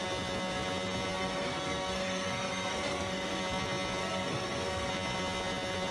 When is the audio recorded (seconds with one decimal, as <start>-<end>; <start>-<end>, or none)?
0.0-1.1; 3.4-4.0; 4.9-5.9